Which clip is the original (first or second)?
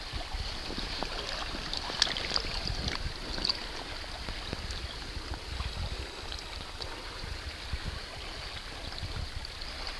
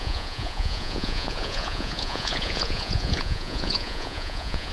first